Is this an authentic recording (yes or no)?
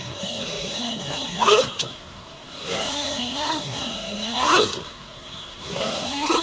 no